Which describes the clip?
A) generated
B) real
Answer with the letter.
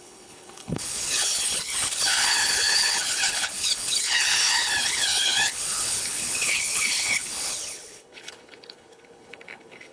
A